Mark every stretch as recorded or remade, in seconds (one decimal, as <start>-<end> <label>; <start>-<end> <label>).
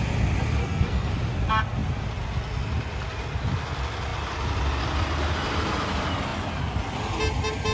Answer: 0.0-0.6 recorded; 0.6-1.1 remade; 1.1-7.7 recorded